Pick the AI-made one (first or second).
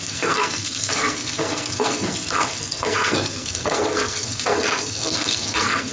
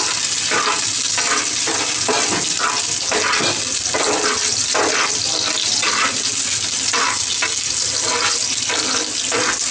first